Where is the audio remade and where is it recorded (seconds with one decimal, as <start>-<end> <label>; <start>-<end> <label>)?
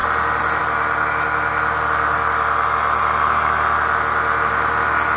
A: 0.0-5.2 recorded